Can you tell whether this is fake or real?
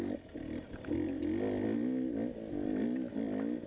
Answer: real